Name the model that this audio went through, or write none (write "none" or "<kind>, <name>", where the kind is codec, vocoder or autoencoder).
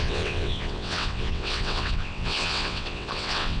vocoder, WaveNeXt